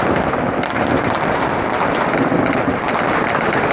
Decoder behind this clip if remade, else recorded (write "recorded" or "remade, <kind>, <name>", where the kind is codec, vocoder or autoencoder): remade, vocoder, BigVGAN v2